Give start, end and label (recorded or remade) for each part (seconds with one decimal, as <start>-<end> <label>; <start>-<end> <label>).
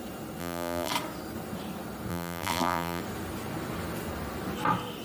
0.0-0.4 recorded; 0.4-0.9 remade; 0.9-2.1 recorded; 2.1-3.0 remade; 3.0-5.0 recorded